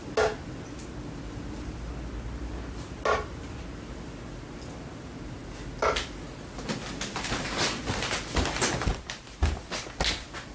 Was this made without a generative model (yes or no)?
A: yes